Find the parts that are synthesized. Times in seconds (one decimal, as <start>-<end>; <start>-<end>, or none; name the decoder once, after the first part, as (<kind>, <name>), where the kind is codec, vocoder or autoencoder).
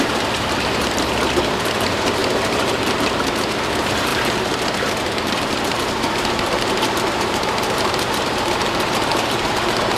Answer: 0.0-10.0 (vocoder, BigVGAN v2)